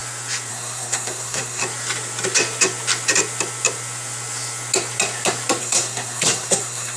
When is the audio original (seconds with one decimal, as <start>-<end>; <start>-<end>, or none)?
0.0-0.5; 1.6-5.6